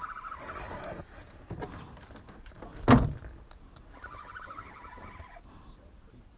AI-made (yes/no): no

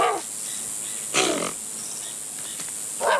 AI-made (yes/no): no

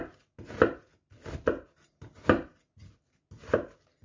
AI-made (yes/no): no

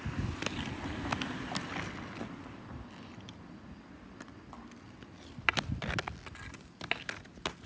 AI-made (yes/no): no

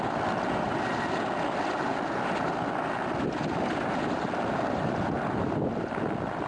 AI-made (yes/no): no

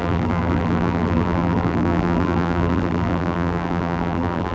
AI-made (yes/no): yes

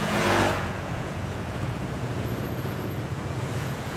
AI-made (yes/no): yes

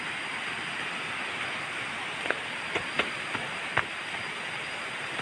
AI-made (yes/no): no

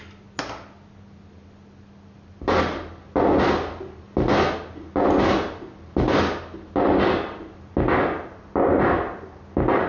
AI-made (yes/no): no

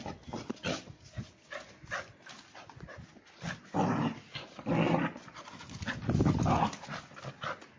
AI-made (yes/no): no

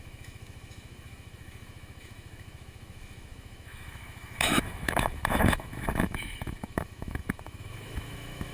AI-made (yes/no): yes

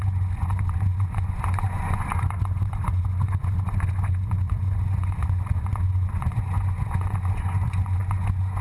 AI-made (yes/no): yes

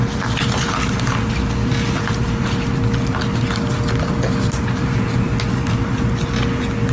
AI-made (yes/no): no